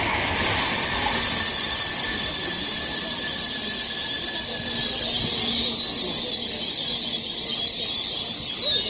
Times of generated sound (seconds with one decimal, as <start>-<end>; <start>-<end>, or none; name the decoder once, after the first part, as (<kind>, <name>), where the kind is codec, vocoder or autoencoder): 1.5-2.7 (vocoder, BigVGAN v2)